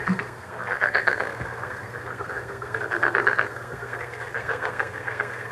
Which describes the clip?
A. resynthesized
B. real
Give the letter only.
A